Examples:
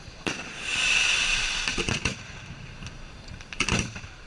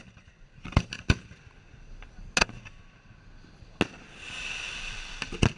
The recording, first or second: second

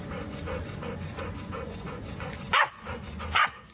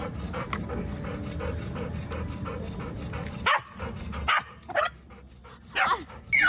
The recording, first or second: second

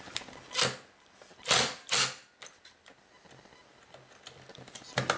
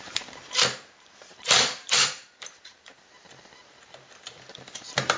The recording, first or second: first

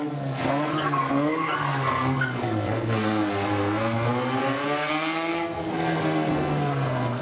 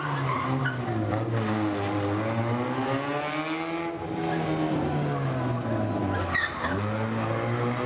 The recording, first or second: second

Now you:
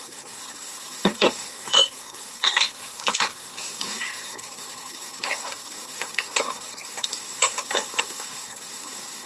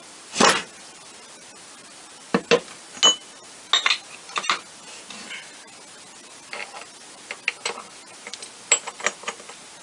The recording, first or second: second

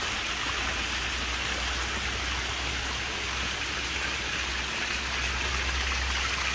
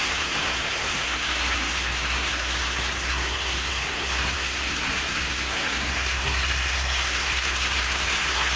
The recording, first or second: first